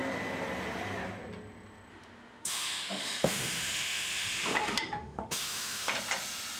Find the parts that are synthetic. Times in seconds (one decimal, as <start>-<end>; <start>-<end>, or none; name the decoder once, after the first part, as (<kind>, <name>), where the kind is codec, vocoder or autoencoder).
1.9-5.9 (autoencoder, DAC-VAE)